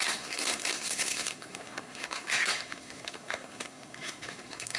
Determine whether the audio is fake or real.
fake